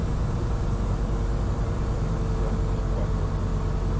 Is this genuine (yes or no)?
yes